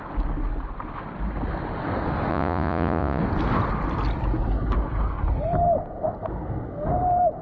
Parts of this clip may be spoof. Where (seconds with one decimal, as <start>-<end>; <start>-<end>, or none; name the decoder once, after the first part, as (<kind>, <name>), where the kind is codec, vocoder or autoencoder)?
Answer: 2.3-3.2 (vocoder, Vocos)